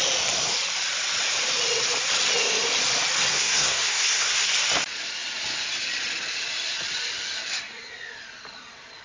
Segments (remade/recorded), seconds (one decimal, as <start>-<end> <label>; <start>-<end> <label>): 0.0-3.3 recorded; 3.3-4.5 remade; 4.5-9.0 recorded